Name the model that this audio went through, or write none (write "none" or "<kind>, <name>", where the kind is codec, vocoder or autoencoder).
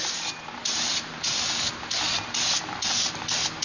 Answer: none